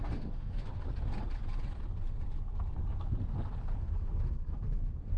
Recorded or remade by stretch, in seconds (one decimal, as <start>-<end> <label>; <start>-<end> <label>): 0.0-0.7 remade; 0.7-3.8 recorded; 3.8-5.2 remade